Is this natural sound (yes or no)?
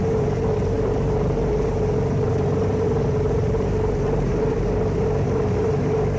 no